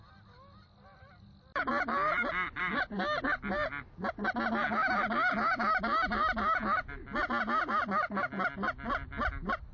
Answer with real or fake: real